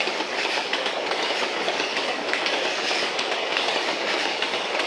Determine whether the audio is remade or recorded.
remade